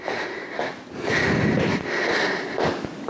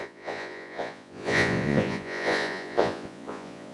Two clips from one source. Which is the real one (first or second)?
first